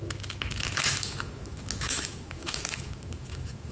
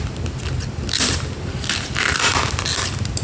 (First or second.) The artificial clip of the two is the first